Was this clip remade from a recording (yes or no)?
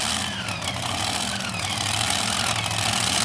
no